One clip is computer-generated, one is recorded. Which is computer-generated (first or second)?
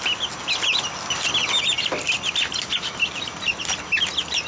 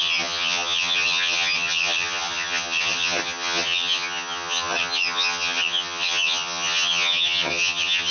second